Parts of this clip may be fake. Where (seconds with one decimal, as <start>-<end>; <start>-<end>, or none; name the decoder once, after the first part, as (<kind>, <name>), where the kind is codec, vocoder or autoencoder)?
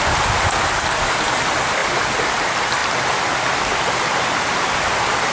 none